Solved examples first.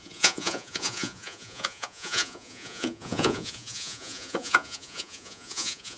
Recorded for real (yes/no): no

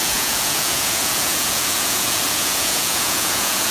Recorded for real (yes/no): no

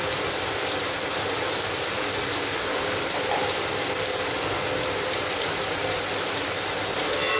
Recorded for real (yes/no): yes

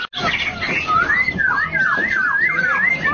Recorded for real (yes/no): yes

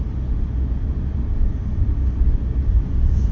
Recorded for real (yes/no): yes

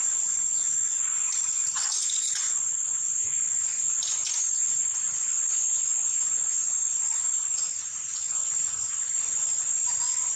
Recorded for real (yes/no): no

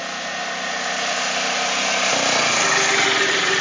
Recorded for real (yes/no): yes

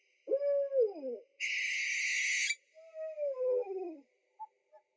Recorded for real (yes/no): yes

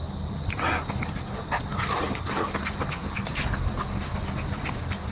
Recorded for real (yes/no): yes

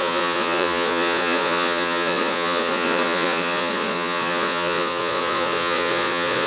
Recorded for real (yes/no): no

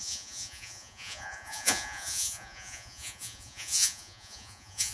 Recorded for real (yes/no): no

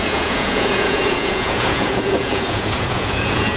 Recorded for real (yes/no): no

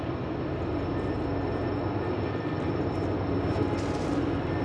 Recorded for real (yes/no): yes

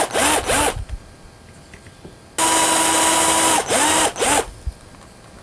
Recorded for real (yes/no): yes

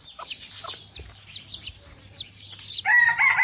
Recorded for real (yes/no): yes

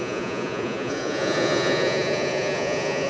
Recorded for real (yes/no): no